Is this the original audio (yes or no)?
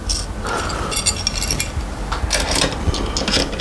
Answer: yes